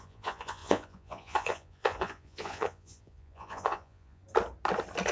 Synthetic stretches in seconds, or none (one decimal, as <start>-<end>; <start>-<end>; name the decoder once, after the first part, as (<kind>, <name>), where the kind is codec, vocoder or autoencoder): 0.0-4.2 (vocoder, Vocos)